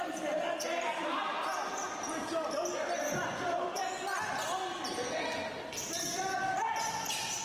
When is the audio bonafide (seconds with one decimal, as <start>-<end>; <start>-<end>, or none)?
1.5-2.0; 3.8-5.6